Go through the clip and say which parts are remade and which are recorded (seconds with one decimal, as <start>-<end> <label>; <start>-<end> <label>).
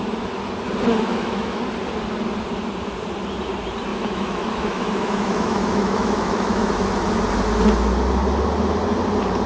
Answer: 0.0-1.1 recorded; 1.1-1.6 remade; 1.6-3.9 recorded; 3.9-6.7 remade; 6.7-9.5 recorded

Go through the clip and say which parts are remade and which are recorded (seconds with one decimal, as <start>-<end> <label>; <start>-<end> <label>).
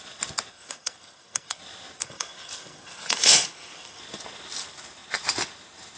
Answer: 0.0-0.5 recorded; 0.5-1.6 remade; 1.6-2.0 recorded; 2.0-4.0 remade; 4.0-6.0 recorded